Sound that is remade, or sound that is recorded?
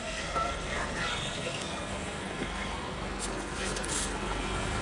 remade